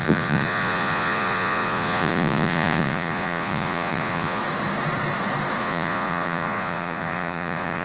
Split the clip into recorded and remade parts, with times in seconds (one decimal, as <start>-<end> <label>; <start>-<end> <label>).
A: 0.0-4.4 remade; 4.4-5.6 recorded; 5.6-7.8 remade